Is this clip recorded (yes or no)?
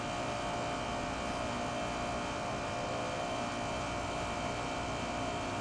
yes